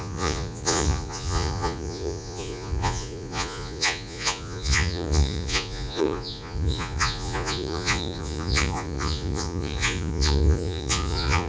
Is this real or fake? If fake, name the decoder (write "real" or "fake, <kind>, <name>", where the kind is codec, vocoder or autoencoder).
fake, vocoder, Vocos